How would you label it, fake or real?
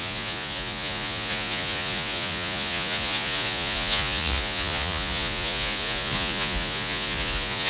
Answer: fake